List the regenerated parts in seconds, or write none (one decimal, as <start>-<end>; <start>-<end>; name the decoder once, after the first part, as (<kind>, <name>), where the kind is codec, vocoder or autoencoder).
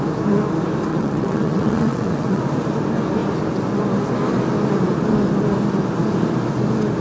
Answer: 0.9-2.4 (vocoder, WaveNeXt)